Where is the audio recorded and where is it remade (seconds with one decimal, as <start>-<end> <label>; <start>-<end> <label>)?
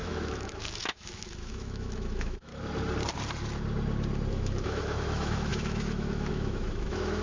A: 0.0-2.5 remade; 2.5-4.3 recorded; 4.3-7.2 remade